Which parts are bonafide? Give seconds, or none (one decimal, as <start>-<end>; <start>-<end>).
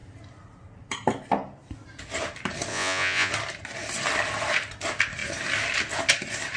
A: 0.0-2.7; 3.3-6.6